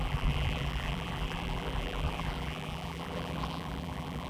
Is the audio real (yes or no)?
no